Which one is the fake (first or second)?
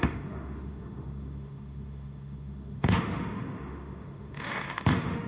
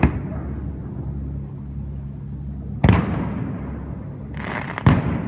first